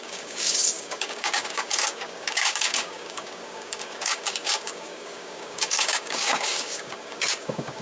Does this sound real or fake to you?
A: fake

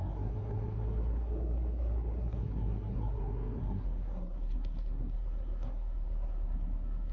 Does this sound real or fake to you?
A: fake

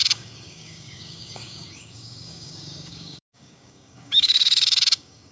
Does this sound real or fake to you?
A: fake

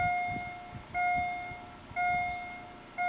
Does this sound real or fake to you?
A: real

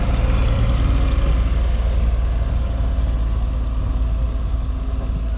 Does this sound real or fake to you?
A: real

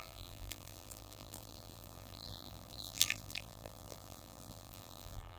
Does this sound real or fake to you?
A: fake